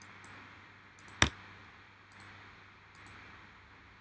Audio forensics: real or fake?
real